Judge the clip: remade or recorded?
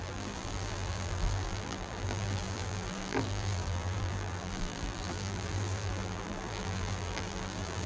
remade